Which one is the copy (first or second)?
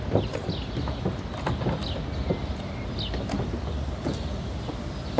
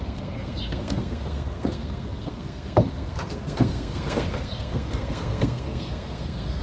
second